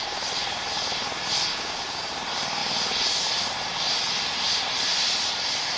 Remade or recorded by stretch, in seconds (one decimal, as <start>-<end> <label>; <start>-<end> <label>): 0.0-1.5 recorded; 1.5-2.1 remade; 2.1-5.8 recorded